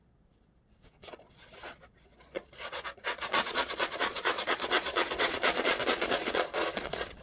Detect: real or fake fake